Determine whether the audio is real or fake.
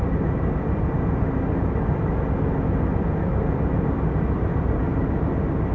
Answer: real